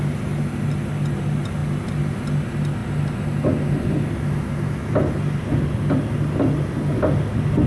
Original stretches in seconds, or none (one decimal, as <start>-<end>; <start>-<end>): 0.0-7.7